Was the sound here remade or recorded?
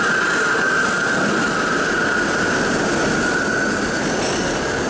recorded